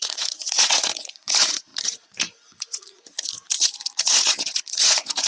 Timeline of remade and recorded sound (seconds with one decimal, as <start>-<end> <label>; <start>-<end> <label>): 0.0-5.3 remade